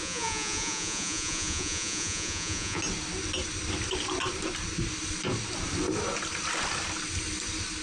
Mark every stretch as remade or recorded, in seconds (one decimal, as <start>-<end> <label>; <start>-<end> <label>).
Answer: 0.0-2.8 remade; 2.8-7.8 recorded